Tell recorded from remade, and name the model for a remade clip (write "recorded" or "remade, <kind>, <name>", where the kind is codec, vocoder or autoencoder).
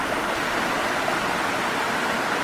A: recorded